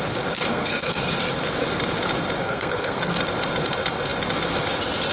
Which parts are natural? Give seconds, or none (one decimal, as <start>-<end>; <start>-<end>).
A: 0.0-0.5; 1.0-2.4; 3.1-5.1